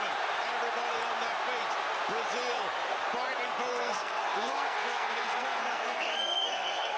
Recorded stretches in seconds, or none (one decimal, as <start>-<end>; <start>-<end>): 0.0-3.7